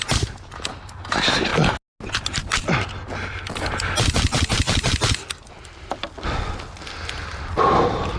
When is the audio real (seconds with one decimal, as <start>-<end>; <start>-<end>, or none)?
0.0-8.2